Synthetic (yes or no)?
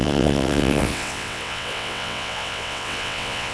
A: yes